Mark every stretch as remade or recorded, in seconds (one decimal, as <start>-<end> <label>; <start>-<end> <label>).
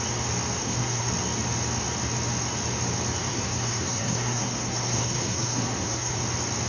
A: 0.0-0.6 recorded; 0.6-1.1 remade; 1.1-3.3 recorded; 3.3-6.2 remade; 6.2-6.7 recorded